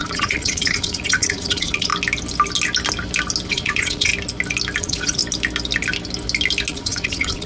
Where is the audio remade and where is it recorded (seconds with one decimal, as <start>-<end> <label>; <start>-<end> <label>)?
0.0-1.9 remade; 1.9-3.5 recorded; 3.5-4.1 remade; 4.1-4.8 recorded; 4.8-5.2 remade; 5.2-6.7 recorded; 6.7-7.5 remade

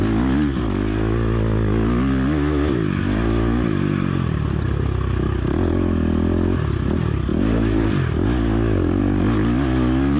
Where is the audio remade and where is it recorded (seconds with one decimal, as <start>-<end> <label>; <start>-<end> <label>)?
0.0-10.2 recorded

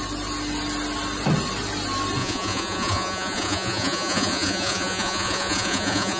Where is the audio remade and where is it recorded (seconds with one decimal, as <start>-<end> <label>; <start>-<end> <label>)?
0.0-2.2 recorded; 2.2-6.2 remade